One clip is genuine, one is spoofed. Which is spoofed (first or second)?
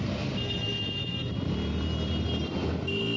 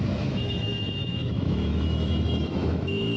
second